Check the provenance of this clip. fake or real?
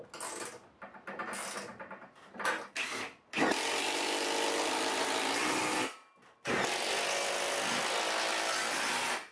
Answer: real